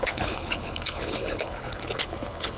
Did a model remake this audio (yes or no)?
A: yes